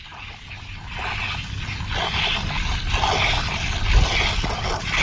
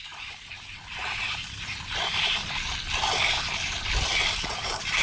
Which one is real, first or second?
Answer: first